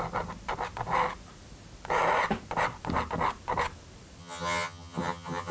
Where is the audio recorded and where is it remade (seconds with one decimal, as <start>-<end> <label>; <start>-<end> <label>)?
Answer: 0.0-4.2 recorded; 4.2-5.5 remade